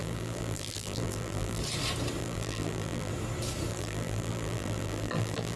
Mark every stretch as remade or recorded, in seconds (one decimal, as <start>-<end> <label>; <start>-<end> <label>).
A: 0.0-1.6 remade; 1.6-2.2 recorded; 2.2-3.1 remade; 3.1-3.7 recorded; 3.7-5.6 remade